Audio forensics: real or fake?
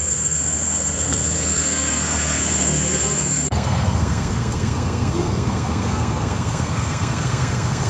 fake